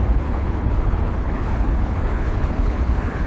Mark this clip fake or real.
fake